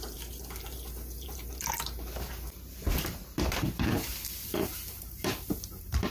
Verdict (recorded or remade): remade